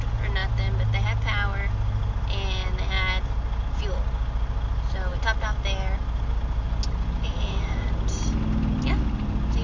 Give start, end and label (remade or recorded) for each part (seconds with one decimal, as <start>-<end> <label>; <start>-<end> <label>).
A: 0.0-9.6 recorded